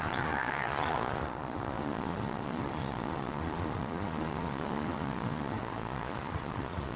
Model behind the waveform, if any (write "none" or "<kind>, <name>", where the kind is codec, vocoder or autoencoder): vocoder, Vocos